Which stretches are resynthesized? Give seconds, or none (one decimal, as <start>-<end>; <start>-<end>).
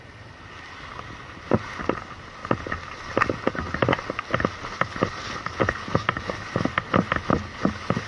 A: none